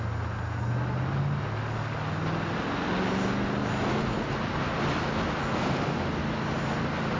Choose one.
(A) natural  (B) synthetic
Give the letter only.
A